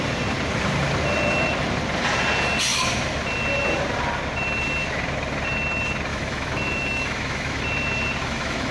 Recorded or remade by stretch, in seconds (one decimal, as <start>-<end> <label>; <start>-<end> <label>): 0.0-6.1 recorded; 6.1-7.6 remade; 7.6-8.2 recorded; 8.2-8.7 remade